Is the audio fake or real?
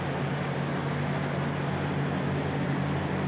real